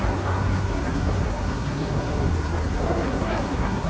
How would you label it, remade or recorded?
remade